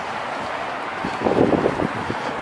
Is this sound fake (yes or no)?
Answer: no